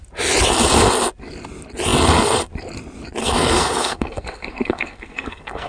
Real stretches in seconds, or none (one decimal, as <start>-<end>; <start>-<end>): 0.0-3.2